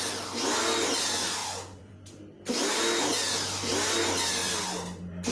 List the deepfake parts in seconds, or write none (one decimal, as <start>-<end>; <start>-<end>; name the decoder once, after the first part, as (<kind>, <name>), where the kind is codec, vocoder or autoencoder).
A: 1.4-2.4 (vocoder, BigVGAN v2)